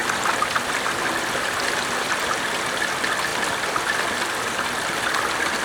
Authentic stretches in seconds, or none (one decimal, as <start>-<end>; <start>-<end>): 0.0-5.6